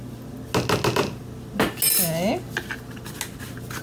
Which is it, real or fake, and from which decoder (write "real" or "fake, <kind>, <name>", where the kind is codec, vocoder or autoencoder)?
real